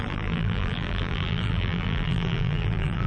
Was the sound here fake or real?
fake